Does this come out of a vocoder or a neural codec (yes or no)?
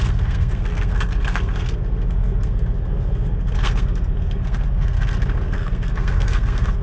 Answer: yes